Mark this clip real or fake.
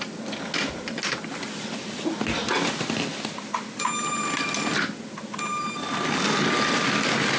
real